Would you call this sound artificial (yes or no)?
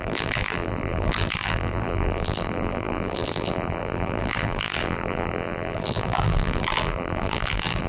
yes